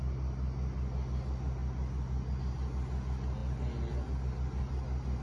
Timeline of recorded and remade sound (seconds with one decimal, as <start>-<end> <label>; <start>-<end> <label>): 0.0-5.2 recorded